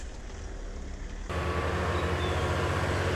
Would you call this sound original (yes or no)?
yes